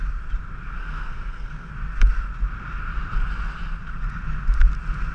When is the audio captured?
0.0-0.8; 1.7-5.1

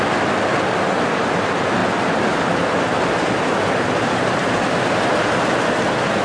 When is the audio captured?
0.0-6.2

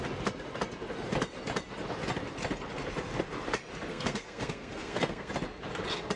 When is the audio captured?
0.0-3.9; 5.3-6.2

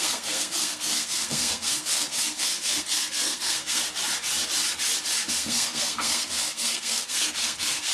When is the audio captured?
3.8-5.3